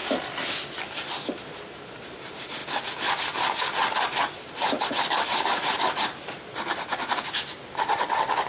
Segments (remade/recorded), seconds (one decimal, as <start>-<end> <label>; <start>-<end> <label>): 0.0-1.5 recorded; 1.5-2.6 remade; 2.6-4.4 recorded; 4.4-8.5 remade